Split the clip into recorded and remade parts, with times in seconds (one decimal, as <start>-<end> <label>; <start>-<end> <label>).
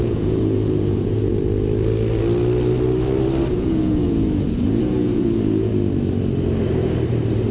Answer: 0.0-1.3 remade; 1.3-3.5 recorded; 3.5-5.7 remade; 5.7-7.5 recorded